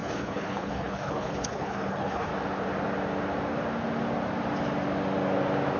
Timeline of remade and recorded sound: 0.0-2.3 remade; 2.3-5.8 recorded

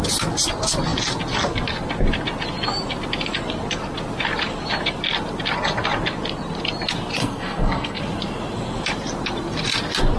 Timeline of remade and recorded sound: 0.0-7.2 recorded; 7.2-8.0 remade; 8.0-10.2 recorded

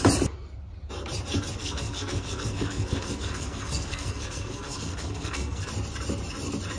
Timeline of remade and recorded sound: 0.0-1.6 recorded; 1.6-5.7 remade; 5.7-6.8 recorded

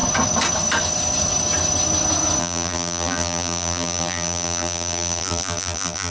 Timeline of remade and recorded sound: 0.0-2.4 recorded; 2.4-6.1 remade